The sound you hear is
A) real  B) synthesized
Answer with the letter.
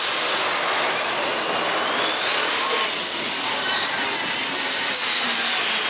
A